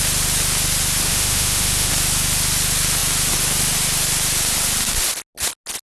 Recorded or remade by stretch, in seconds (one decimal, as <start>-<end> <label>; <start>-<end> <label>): 0.0-1.1 recorded; 1.1-1.9 remade; 1.9-6.0 recorded